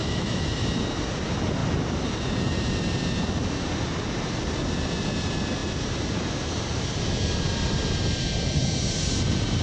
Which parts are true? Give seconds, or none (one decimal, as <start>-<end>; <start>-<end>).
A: 0.7-9.6